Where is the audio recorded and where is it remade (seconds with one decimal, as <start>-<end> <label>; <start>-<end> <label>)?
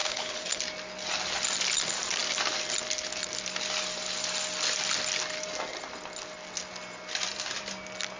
0.0-0.6 remade; 0.6-8.2 recorded